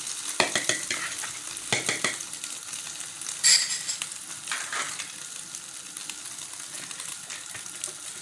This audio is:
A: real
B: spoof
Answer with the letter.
A